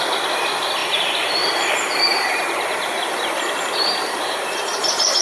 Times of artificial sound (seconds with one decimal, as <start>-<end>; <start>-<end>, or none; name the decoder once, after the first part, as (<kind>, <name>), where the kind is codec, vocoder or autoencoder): 0.8-1.7 (vocoder, BigVGAN v2); 2.1-5.2